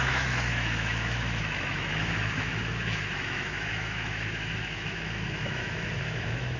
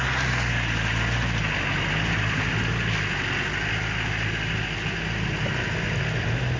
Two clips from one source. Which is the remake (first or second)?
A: first